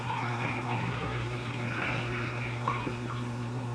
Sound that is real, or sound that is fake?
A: fake